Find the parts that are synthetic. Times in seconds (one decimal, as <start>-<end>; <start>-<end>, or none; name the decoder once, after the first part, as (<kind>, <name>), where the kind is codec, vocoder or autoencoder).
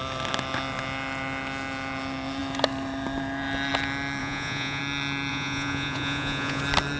4.2-4.8 (vocoder, Vocos); 5.3-6.6